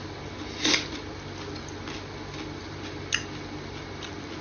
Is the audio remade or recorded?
recorded